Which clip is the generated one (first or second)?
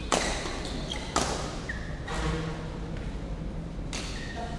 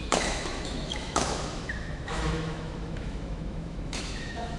second